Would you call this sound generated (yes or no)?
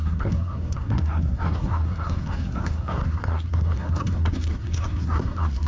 yes